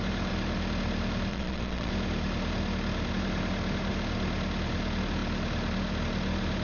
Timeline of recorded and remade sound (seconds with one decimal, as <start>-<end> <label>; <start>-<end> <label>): 0.0-1.3 recorded; 1.3-1.9 remade; 1.9-6.6 recorded